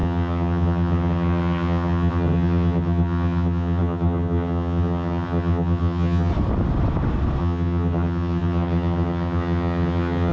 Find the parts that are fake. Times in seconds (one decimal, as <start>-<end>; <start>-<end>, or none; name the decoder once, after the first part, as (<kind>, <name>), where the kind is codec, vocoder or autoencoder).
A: 0.0-6.3 (vocoder, HiFi-GAN); 7.4-10.3